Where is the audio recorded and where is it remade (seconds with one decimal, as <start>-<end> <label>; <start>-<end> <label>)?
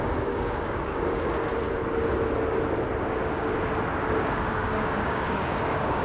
0.0-1.5 remade; 1.5-3.0 recorded; 3.0-3.5 remade; 3.5-4.2 recorded; 4.2-6.0 remade